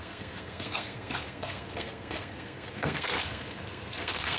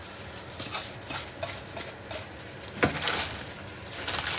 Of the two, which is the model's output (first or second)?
first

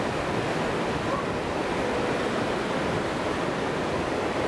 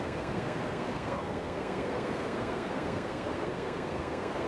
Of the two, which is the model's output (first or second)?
second